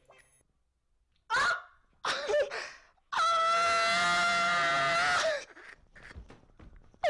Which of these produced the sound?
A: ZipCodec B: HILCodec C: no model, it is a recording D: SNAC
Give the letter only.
C